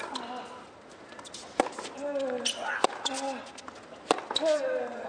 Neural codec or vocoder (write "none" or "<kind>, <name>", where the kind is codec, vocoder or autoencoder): none